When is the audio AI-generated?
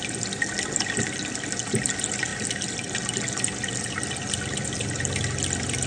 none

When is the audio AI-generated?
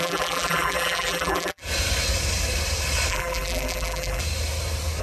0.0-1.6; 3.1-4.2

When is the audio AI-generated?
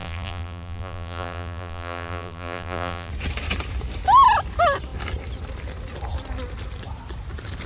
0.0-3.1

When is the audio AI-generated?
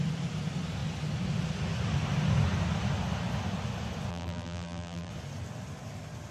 4.1-5.1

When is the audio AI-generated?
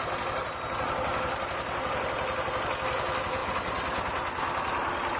1.1-2.6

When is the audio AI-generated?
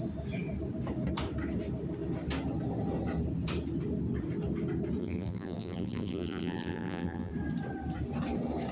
5.0-7.3